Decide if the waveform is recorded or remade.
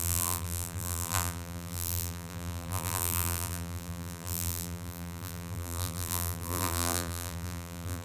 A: remade